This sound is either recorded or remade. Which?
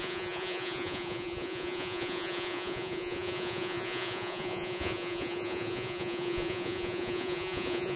remade